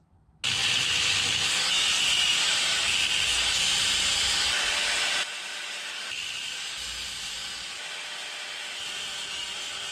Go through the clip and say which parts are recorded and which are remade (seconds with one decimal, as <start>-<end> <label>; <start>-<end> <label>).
0.0-9.9 recorded